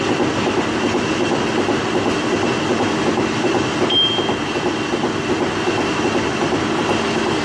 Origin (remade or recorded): recorded